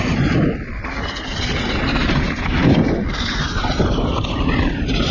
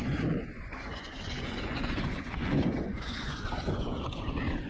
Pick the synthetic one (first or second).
second